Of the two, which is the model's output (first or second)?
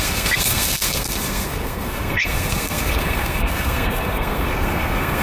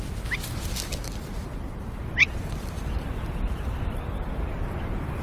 first